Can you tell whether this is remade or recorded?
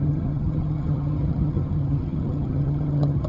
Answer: remade